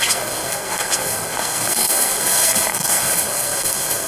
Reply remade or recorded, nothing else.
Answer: remade